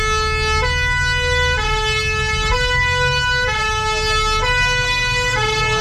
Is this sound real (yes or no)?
yes